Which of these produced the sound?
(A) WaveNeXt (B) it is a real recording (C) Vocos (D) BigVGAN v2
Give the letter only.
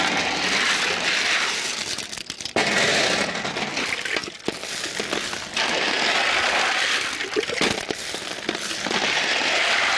B